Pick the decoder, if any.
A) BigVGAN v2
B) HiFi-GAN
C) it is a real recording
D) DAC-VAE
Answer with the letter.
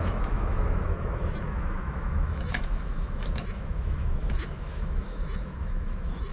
D